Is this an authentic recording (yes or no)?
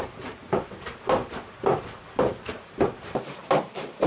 no